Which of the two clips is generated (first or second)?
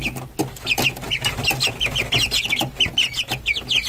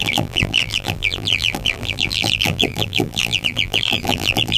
second